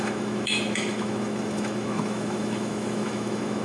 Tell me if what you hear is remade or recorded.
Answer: remade